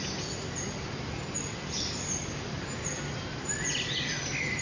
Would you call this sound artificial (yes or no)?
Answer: no